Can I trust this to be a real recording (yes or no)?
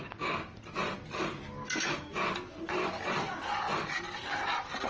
yes